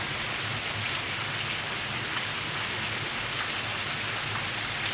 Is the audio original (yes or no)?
yes